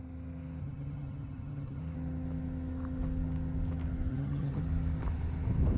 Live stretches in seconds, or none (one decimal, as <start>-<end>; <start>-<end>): 0.0-0.6; 1.8-4.1; 4.6-5.8